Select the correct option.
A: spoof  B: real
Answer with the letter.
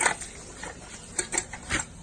B